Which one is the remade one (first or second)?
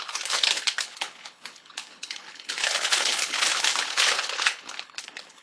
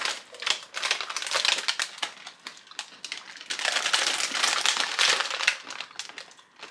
first